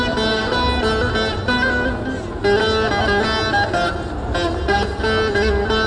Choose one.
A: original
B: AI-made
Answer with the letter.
A